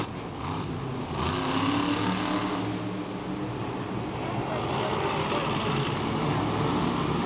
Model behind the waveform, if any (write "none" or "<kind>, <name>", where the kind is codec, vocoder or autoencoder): none